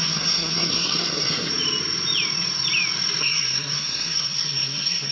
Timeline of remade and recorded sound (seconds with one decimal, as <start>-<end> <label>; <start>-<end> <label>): 0.0-1.5 remade; 1.5-3.2 recorded; 3.2-5.1 remade